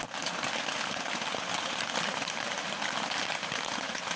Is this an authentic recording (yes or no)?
yes